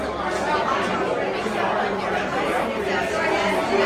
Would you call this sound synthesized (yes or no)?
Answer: no